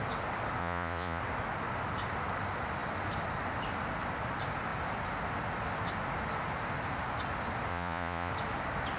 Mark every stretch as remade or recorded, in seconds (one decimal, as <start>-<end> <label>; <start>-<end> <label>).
0.0-0.6 recorded; 0.6-1.2 remade; 1.2-7.7 recorded; 7.7-8.3 remade; 8.3-9.0 recorded